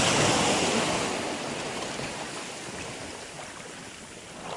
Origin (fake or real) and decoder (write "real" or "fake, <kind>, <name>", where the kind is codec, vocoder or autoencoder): real